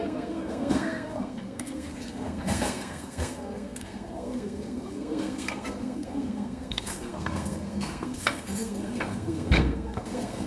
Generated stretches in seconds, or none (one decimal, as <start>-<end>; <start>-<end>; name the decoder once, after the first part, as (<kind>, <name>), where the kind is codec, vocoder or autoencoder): 0.0-10.5 (codec, SNAC)